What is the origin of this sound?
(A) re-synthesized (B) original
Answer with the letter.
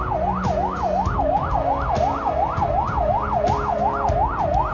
B